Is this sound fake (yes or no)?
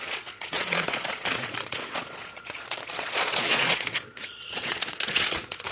yes